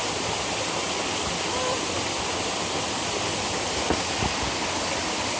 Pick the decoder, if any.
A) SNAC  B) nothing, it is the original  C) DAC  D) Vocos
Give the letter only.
B